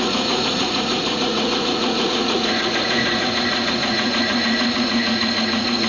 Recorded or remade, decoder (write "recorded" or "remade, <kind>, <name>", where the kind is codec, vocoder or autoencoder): remade, vocoder, Vocos